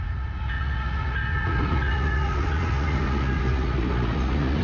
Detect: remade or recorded remade